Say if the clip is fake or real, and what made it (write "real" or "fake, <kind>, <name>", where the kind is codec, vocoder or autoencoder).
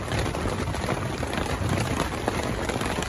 real